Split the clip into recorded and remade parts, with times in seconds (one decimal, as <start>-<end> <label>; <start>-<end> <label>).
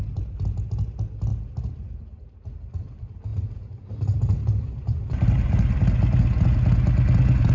0.0-1.3 recorded; 1.3-2.5 remade; 2.5-3.3 recorded; 3.3-5.8 remade; 5.8-7.5 recorded